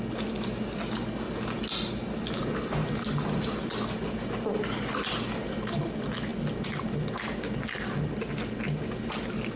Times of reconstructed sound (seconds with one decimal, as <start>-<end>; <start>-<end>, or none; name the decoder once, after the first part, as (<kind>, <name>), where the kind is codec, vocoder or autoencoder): none